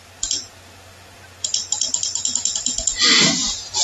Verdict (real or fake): real